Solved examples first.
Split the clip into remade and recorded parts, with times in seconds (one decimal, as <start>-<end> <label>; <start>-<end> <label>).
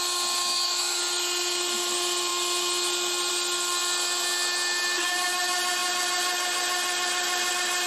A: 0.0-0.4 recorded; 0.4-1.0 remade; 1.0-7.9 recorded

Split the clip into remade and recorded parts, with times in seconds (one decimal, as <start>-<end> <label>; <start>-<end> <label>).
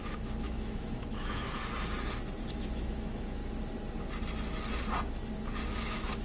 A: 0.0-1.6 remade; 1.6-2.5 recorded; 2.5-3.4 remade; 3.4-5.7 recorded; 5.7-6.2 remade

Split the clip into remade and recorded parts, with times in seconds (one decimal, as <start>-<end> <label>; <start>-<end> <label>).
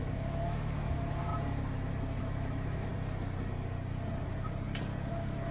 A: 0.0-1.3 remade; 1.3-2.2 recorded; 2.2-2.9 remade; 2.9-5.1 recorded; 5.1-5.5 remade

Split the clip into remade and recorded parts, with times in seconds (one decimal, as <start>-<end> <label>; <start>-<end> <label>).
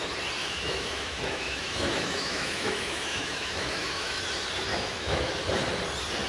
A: 0.0-0.4 recorded; 0.4-4.2 remade; 4.2-4.7 recorded; 4.7-5.3 remade; 5.3-6.3 recorded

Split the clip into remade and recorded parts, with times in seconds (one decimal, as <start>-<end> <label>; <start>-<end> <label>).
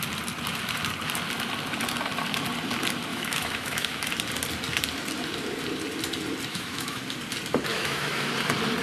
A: 0.0-3.1 recorded; 3.1-4.1 remade; 4.1-6.5 recorded; 6.5-7.0 remade; 7.0-7.7 recorded; 7.7-8.3 remade; 8.3-8.8 recorded